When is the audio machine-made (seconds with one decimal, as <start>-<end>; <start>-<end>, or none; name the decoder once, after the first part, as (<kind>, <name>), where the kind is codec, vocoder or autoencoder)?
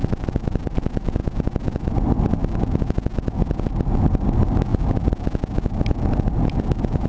0.0-2.4 (vocoder, BigVGAN v2); 4.0-4.7; 5.8-7.1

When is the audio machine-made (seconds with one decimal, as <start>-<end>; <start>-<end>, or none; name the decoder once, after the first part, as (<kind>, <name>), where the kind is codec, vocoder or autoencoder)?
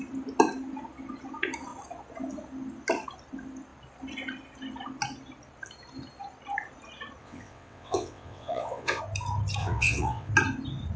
7.2-9.0 (vocoder, WaveNeXt); 9.6-10.3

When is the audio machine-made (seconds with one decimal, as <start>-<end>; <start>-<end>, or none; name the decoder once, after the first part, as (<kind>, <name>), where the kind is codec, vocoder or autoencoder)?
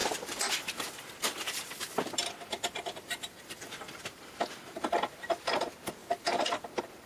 0.0-3.9 (vocoder, BigVGAN v2); 6.0-6.6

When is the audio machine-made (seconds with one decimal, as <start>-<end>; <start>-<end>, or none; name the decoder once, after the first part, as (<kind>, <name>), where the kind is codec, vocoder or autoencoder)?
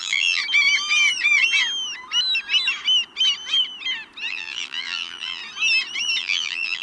0.0-0.4 (vocoder, BigVGAN v2); 4.3-5.4; 6.2-6.8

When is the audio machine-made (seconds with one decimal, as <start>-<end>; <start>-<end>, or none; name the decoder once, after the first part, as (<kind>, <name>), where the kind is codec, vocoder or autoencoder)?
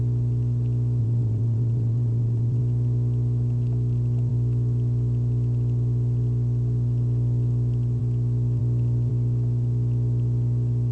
1.0-2.6 (vocoder, WaveNeXt)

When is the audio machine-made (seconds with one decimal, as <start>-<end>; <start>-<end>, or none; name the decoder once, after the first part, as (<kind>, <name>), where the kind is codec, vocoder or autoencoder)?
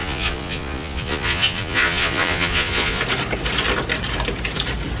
0.0-3.0 (vocoder, Vocos)